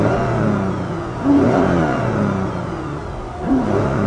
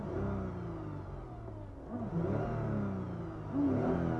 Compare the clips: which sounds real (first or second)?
second